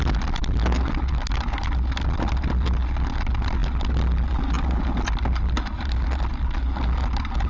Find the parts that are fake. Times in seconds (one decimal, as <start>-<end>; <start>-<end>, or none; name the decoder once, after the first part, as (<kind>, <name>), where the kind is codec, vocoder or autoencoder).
none